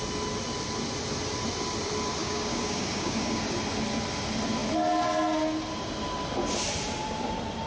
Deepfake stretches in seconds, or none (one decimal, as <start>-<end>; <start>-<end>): 2.2-3.4